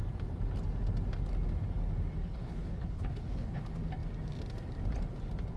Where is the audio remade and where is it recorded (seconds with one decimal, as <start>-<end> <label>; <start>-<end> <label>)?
0.0-2.2 recorded; 2.2-3.6 remade; 3.6-5.6 recorded